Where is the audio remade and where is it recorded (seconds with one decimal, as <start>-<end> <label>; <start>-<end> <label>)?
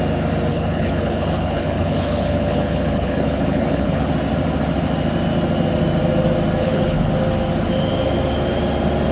0.0-0.5 recorded; 0.5-4.1 remade; 4.1-6.6 recorded; 6.6-7.1 remade; 7.1-9.1 recorded